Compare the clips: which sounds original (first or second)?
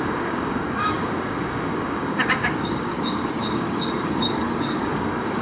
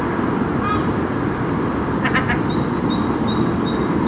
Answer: second